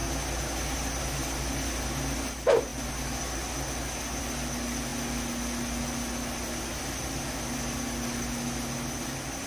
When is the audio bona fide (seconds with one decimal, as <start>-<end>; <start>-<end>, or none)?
0.0-9.5

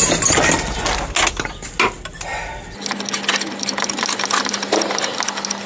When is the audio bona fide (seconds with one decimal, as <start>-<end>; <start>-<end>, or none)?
0.0-5.7

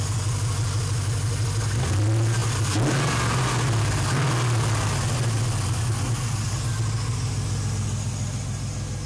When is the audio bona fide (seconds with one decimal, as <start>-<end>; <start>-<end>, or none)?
0.0-9.1

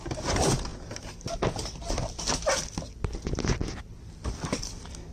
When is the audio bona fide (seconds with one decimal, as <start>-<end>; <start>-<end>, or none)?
0.0-5.1

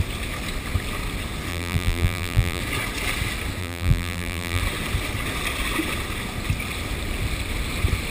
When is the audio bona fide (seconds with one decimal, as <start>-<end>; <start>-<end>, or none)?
0.0-1.5; 2.6-3.6; 4.6-8.1

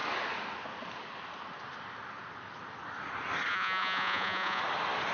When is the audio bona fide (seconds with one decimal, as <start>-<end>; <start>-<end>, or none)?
0.0-3.5; 4.6-5.1